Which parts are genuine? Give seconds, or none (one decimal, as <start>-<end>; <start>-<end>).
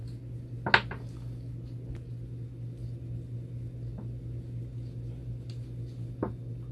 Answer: 0.0-6.7